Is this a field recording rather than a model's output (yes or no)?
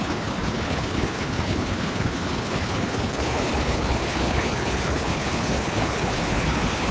no